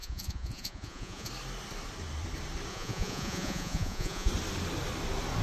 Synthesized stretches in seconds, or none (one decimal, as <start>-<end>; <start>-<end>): 0.0-1.3; 2.7-4.3